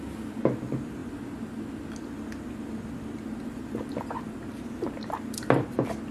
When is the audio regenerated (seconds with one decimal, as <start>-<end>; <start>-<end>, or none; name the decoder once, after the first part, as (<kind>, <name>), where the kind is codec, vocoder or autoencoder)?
none